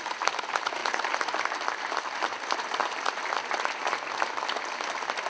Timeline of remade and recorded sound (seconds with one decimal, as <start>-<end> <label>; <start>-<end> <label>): 0.0-5.3 recorded